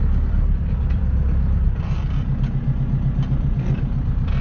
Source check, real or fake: fake